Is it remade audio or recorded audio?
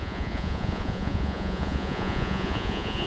remade